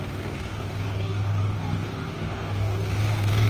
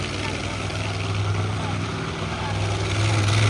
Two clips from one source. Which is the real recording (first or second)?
second